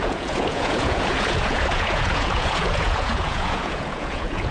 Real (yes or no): no